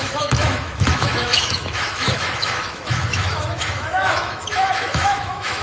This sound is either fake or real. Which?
fake